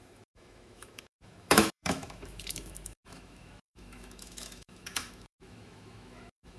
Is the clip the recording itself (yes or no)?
no